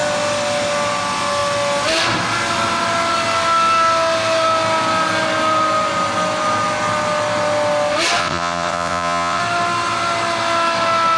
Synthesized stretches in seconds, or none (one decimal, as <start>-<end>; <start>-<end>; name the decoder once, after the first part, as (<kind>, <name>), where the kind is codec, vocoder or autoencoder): 8.2-9.4 (vocoder, WaveNeXt)

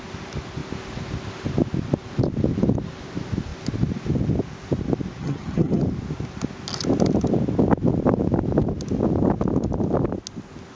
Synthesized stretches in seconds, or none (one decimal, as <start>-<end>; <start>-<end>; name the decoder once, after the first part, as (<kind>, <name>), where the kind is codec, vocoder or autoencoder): 5.2-5.8 (vocoder, HiFi-GAN)